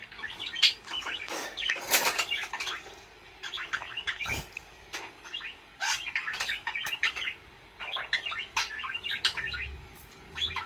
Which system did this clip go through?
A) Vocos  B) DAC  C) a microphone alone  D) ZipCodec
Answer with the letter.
B